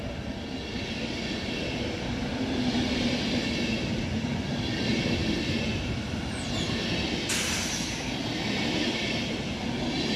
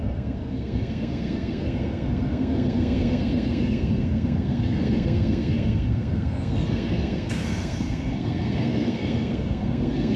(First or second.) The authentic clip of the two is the first